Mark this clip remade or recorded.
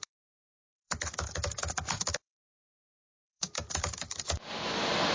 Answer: remade